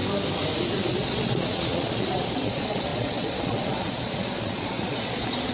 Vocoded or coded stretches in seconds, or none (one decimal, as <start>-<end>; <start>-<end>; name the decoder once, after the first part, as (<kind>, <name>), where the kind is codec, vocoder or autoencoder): 0.6-5.5 (vocoder, Vocos)